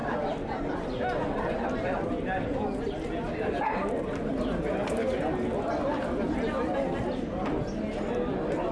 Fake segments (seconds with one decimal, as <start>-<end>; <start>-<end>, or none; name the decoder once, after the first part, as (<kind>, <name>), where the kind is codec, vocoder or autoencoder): none